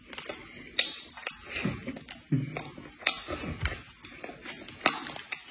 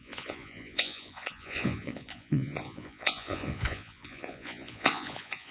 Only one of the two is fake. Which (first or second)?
second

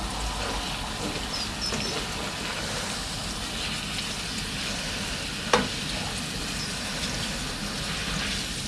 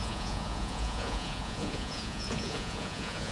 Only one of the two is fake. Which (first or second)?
second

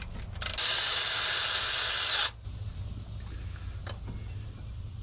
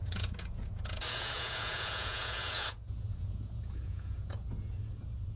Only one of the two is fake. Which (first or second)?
second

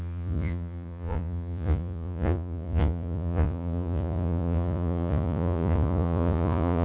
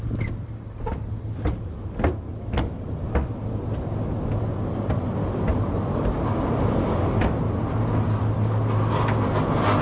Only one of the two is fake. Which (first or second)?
first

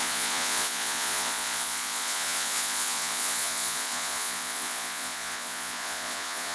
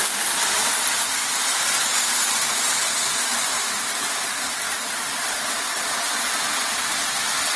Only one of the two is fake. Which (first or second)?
first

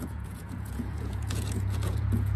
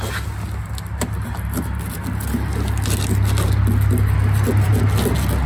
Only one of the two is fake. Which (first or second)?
first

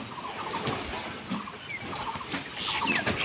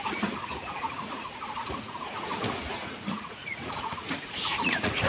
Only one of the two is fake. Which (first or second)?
second